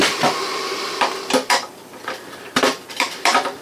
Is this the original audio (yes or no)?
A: no